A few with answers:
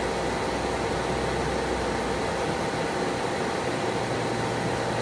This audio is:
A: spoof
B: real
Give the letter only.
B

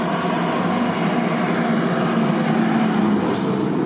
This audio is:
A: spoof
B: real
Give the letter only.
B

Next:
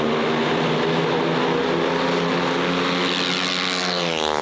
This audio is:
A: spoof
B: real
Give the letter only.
B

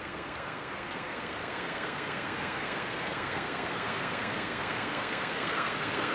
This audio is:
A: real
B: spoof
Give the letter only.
B